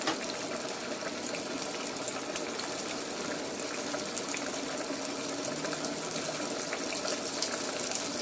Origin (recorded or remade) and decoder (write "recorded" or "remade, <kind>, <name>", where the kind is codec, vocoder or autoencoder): recorded